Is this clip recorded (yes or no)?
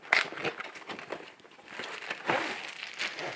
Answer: yes